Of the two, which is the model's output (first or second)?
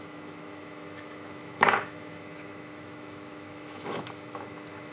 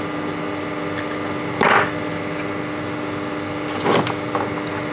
first